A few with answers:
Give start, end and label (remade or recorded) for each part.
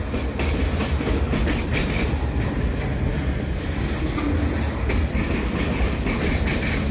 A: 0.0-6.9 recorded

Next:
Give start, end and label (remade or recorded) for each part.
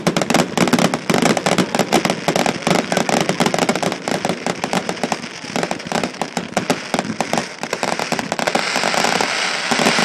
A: 0.0-3.7 recorded; 3.7-6.4 remade; 6.4-7.4 recorded; 7.4-8.2 remade; 8.2-10.0 recorded